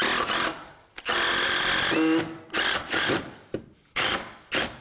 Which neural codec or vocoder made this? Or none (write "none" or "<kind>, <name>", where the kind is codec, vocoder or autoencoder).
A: none